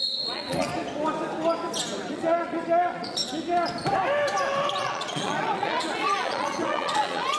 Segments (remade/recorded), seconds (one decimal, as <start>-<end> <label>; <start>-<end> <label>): 0.0-0.7 remade; 0.7-2.1 recorded; 2.1-3.2 remade; 3.2-4.8 recorded; 4.8-7.4 remade